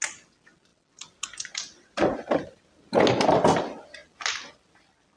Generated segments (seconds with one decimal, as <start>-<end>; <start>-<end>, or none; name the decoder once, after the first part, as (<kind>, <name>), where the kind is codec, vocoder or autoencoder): none